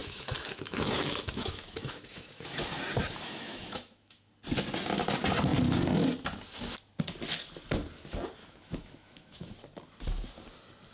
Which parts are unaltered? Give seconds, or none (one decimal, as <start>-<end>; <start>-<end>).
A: 2.5-3.0; 4.3-8.4; 9.5-10.9